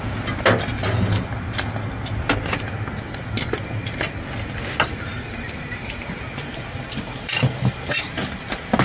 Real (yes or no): yes